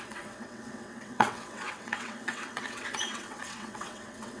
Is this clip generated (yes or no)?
yes